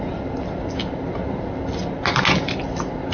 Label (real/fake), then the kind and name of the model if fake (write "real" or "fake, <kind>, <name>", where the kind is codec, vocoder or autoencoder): real